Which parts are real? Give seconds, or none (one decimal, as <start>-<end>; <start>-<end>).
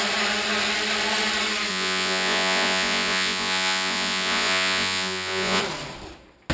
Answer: 0.0-1.7; 5.6-6.5